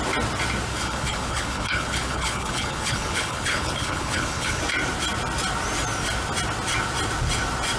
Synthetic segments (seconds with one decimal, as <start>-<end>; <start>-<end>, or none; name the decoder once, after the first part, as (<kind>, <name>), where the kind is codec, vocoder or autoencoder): 0.7-4.6 (codec, HILCodec)

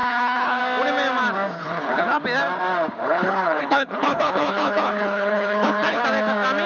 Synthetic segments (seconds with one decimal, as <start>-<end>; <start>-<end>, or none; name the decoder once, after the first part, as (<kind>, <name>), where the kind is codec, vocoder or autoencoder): 0.0-0.6 (codec, HILCodec); 1.6-2.2; 3.0-6.0